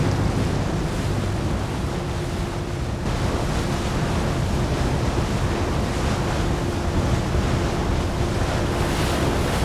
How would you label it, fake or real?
real